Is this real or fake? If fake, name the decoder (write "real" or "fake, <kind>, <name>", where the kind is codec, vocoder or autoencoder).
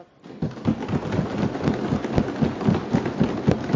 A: real